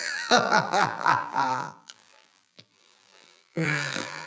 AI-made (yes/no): yes